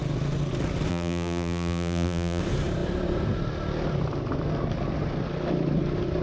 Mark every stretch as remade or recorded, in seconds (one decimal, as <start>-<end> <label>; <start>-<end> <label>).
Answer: 0.0-0.9 recorded; 0.9-2.4 remade; 2.4-6.2 recorded